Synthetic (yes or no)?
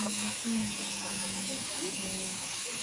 yes